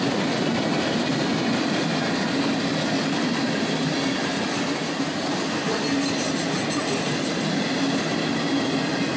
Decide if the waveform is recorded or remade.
recorded